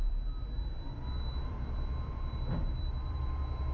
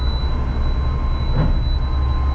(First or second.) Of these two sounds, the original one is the second